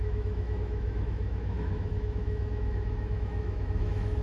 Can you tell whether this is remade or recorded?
remade